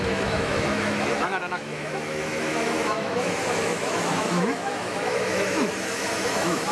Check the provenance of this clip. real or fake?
fake